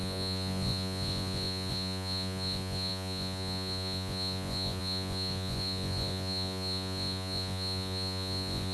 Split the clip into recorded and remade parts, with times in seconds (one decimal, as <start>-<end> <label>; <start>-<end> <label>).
0.0-8.7 remade